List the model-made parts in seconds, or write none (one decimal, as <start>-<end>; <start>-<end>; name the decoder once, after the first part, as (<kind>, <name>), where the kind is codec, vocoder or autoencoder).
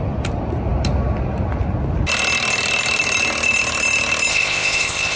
4.3-5.2 (codec, ZipCodec)